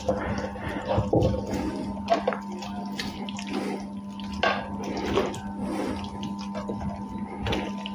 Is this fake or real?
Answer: real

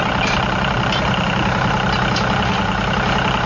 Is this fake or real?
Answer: fake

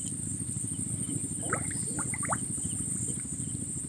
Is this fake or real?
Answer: fake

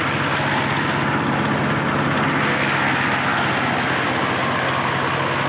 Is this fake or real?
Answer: real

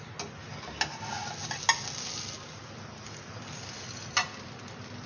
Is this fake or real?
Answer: real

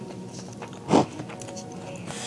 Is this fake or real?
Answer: real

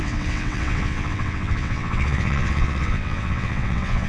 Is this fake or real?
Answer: fake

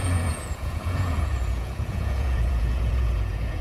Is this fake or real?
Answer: fake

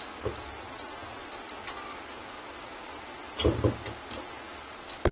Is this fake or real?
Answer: real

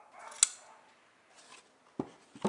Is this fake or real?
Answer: real